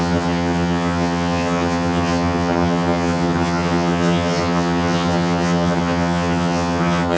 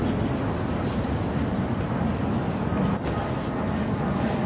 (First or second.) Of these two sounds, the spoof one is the first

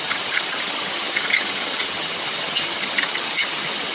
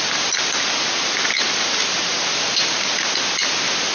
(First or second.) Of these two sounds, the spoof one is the first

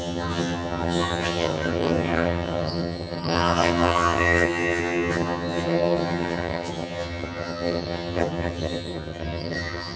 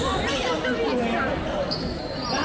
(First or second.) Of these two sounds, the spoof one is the first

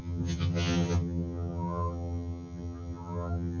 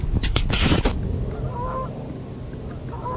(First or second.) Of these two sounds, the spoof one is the first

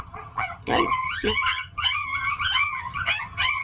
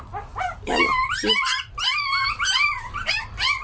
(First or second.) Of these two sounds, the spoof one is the first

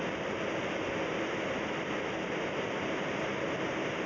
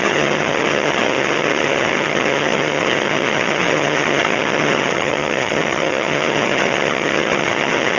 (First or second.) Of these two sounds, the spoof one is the second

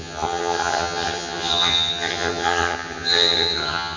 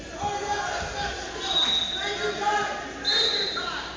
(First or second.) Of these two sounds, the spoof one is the first